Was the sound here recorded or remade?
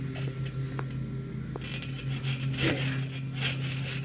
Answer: recorded